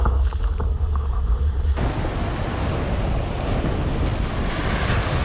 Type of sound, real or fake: real